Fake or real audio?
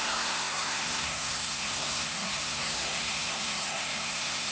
fake